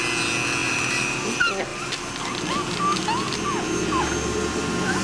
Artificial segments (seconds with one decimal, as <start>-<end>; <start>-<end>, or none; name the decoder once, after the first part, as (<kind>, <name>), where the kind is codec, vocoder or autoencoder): 0.6-1.2 (vocoder, BigVGAN v2); 1.7-2.2